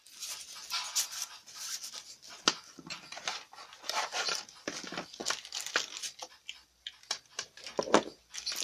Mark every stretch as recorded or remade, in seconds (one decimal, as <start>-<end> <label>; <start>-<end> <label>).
0.0-7.3 recorded; 7.3-8.2 remade; 8.2-8.6 recorded